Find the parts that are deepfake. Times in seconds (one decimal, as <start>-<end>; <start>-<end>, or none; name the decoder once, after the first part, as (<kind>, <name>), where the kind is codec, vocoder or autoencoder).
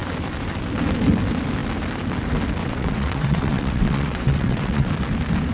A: 2.6-4.9 (vocoder, WaveNeXt)